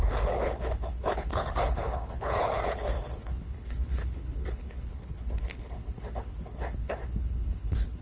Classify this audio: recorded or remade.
remade